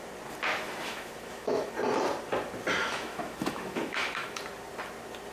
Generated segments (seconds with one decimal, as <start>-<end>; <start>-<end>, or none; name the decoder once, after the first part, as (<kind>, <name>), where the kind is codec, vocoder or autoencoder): 0.5-1.7 (autoencoder, DAC-VAE); 2.8-4.4